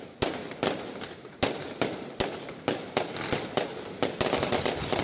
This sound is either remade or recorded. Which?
recorded